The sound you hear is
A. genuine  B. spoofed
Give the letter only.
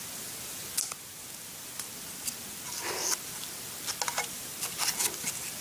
A